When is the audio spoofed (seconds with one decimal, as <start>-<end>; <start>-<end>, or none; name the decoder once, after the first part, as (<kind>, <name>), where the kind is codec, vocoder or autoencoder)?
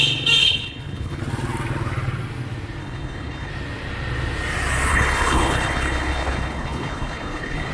0.4-1.2 (codec, HILCodec); 2.8-3.5; 4.9-7.7